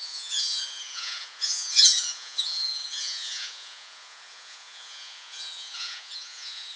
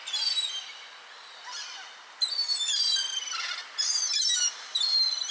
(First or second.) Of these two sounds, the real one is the second